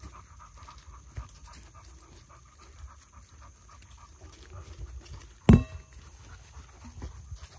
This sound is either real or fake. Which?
real